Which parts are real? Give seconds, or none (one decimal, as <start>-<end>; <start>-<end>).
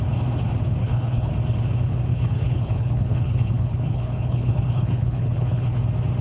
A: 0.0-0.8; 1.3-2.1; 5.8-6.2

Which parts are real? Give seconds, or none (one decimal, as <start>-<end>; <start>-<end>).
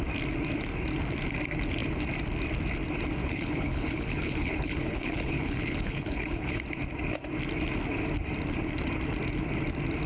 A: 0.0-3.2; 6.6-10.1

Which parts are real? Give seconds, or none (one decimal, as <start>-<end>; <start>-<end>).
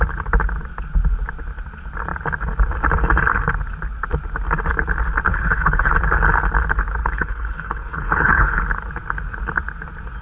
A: 0.0-5.3; 5.9-7.0; 8.6-10.2